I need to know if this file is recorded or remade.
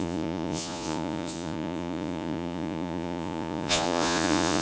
remade